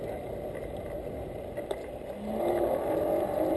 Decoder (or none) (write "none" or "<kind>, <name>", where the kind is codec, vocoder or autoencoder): none